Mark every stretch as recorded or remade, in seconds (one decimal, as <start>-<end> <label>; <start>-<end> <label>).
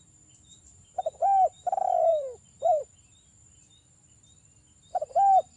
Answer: 0.0-2.1 recorded; 2.1-5.0 remade; 5.0-5.6 recorded